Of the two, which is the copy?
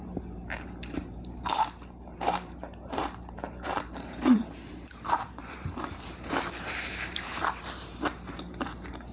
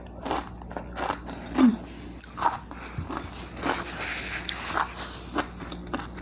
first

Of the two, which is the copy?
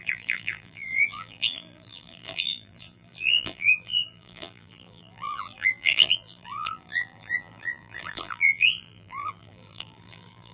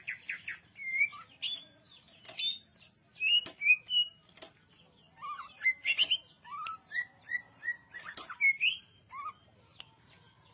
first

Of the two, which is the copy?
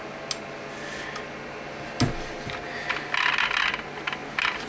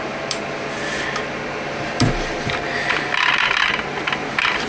second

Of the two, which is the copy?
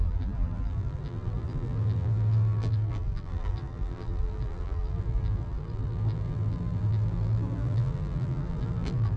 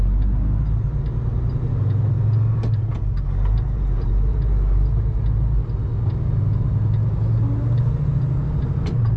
first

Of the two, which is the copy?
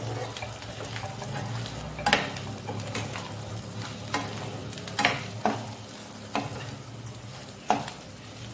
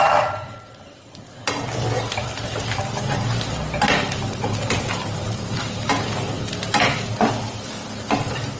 second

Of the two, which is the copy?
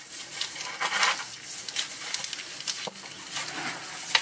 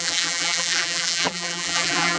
second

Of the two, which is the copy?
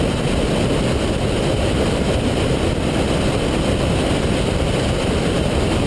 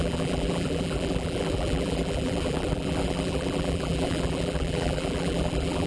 second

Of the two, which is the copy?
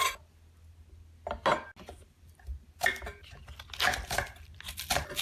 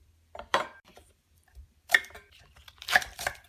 second